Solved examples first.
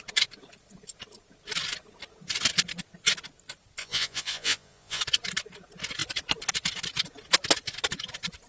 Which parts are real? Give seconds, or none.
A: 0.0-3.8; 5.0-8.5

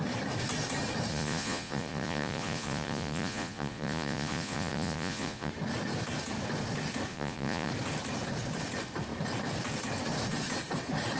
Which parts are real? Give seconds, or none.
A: 0.0-1.1; 5.5-7.1; 7.7-11.2

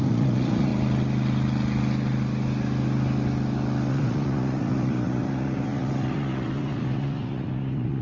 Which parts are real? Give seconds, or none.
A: 0.7-3.9

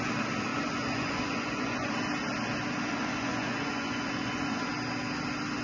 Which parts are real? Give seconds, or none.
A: 0.0-0.5; 1.9-2.9; 4.7-5.6

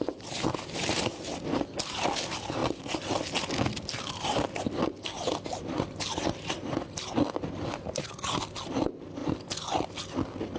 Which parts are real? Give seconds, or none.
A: 0.0-10.6

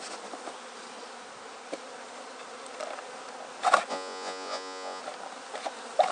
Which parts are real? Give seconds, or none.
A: 0.0-3.9; 5.0-6.1